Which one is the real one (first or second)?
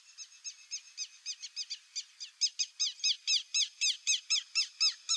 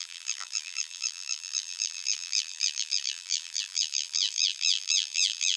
first